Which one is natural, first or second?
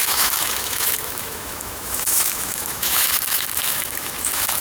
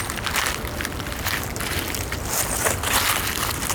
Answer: second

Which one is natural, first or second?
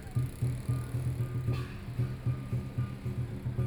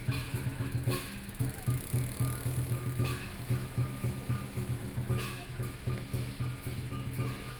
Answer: first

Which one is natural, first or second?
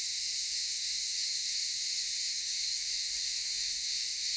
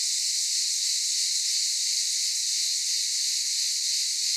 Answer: second